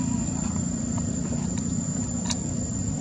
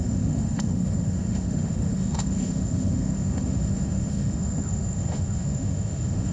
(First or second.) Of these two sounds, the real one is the first